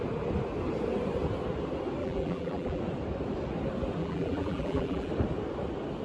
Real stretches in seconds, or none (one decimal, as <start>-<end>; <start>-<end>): 0.0-2.0; 2.8-4.0; 5.1-6.0